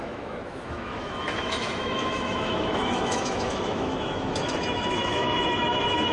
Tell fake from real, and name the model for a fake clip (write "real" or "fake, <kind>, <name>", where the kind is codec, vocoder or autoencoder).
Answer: fake, autoencoder, DAC-VAE